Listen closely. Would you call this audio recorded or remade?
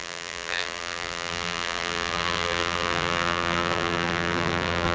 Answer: remade